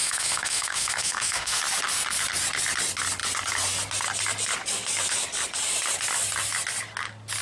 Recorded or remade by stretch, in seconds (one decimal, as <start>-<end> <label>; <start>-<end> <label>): 0.0-1.6 remade; 1.6-7.4 recorded

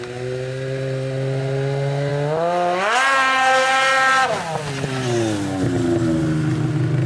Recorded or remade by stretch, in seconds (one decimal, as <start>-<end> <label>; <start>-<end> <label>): 0.0-7.1 recorded

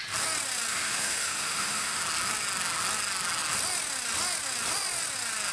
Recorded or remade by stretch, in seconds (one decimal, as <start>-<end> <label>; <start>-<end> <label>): 0.0-0.7 recorded; 0.7-2.0 remade; 2.0-5.5 recorded